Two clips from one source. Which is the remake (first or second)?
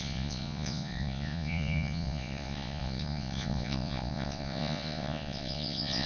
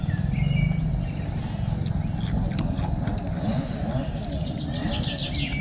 first